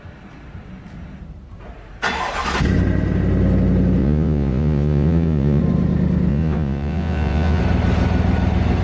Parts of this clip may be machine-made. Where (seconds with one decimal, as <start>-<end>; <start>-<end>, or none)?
4.0-5.6; 6.3-7.6